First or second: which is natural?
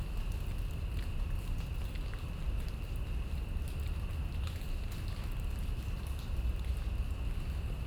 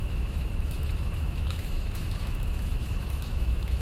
first